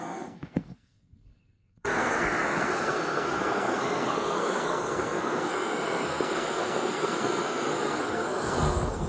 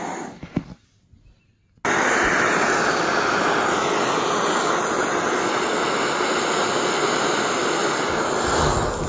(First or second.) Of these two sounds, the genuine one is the second